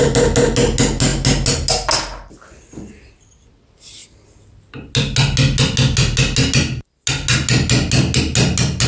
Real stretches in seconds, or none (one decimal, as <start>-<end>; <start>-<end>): 0.0-8.9